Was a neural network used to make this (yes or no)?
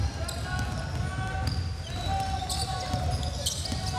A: no